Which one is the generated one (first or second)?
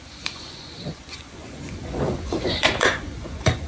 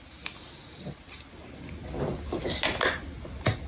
first